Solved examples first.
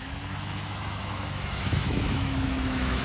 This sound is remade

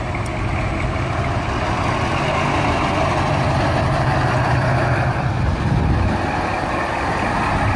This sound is recorded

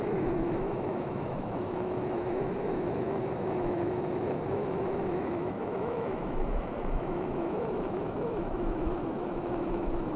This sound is remade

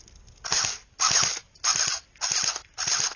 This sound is recorded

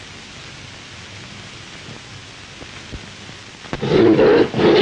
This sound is recorded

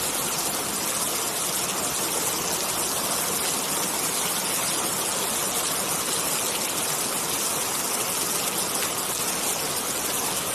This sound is recorded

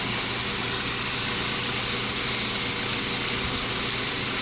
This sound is recorded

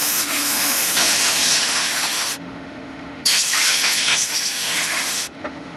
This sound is remade